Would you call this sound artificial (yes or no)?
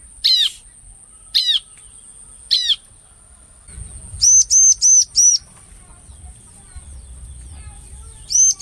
no